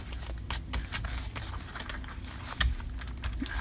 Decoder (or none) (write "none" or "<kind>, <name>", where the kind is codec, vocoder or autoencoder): none